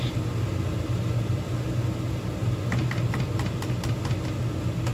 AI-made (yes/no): no